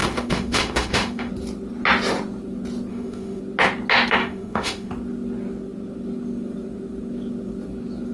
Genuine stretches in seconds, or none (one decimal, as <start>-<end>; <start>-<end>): 1.3-2.9; 3.4-4.2; 4.9-8.1